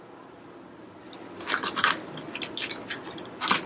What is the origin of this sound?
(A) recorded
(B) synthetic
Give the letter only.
A